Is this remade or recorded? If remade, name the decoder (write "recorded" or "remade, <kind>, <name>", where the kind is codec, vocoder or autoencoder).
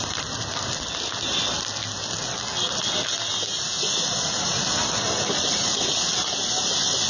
recorded